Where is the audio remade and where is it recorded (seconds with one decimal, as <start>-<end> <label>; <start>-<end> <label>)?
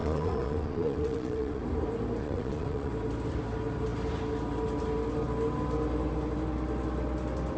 0.0-1.6 remade; 1.6-2.2 recorded; 2.2-2.9 remade; 2.9-7.6 recorded